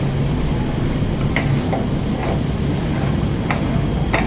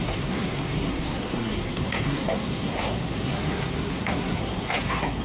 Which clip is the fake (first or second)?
second